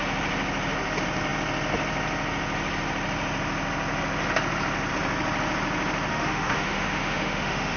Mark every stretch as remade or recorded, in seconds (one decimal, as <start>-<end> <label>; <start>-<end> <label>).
0.0-6.1 recorded; 6.1-7.8 remade